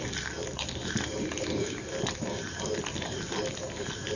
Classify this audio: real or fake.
real